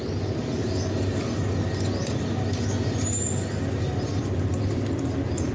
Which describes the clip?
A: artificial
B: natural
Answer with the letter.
B